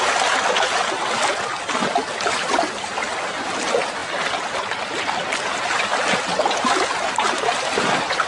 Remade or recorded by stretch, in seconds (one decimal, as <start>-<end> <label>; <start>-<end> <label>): 0.0-8.3 recorded